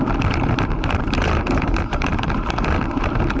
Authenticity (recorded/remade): remade